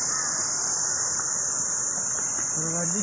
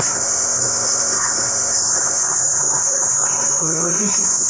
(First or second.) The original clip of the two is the first